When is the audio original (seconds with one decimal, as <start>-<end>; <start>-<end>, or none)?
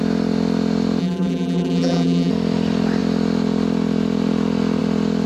0.0-1.0; 2.3-5.3